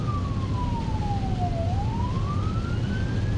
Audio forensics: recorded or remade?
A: recorded